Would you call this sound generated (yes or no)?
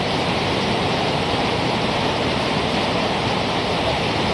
yes